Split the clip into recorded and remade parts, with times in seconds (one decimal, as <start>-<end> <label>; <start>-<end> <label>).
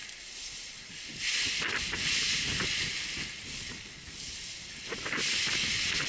0.0-6.1 recorded